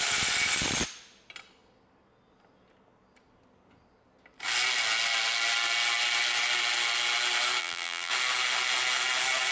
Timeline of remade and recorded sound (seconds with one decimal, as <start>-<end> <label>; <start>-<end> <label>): 0.0-7.6 recorded; 7.6-8.1 remade; 8.1-9.5 recorded